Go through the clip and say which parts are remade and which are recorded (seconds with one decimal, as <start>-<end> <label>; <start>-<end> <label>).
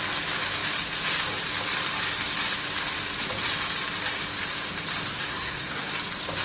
0.0-5.1 recorded; 5.1-5.9 remade; 5.9-6.4 recorded